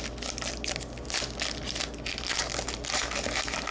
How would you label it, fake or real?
real